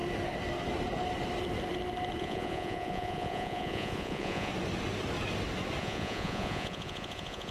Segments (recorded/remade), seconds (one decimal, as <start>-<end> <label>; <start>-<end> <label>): 0.0-2.2 recorded; 2.2-4.5 remade; 4.5-5.8 recorded; 5.8-7.5 remade